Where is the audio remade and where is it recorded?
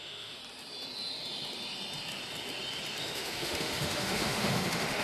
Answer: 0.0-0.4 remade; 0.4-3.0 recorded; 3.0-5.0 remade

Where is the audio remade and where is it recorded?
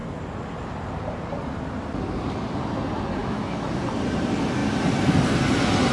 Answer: 0.0-3.2 recorded; 3.2-3.8 remade; 3.8-5.9 recorded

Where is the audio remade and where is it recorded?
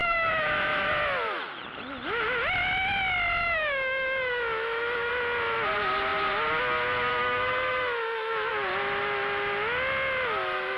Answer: 0.0-0.9 remade; 0.9-3.4 recorded; 3.4-5.1 remade; 5.1-7.1 recorded; 7.1-8.5 remade; 8.5-10.8 recorded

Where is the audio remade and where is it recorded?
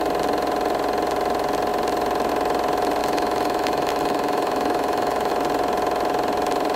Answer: 0.0-3.0 recorded; 3.0-5.3 remade; 5.3-6.8 recorded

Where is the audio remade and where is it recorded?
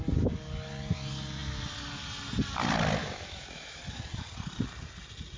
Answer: 0.0-3.0 recorded; 3.0-3.8 remade; 3.8-5.4 recorded